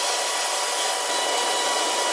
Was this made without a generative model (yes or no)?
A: yes